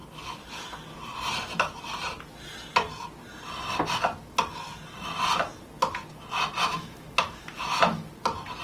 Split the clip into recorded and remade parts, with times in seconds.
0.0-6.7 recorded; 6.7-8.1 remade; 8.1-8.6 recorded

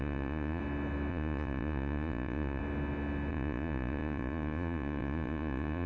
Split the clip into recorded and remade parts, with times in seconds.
0.0-0.6 remade; 0.6-1.1 recorded; 1.1-2.6 remade; 2.6-3.3 recorded; 3.3-5.9 remade

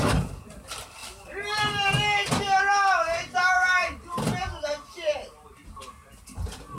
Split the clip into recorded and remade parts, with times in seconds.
0.0-1.0 recorded; 1.0-1.9 remade; 1.9-3.8 recorded; 3.8-6.8 remade

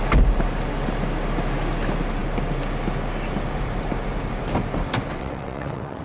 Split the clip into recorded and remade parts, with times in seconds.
0.0-5.1 recorded; 5.1-6.0 remade

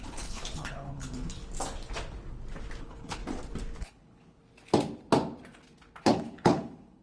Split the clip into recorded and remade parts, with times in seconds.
0.0-1.4 remade; 1.4-2.8 recorded; 2.8-3.2 remade; 3.2-3.8 recorded; 3.8-4.4 remade; 4.4-6.0 recorded; 6.0-7.0 remade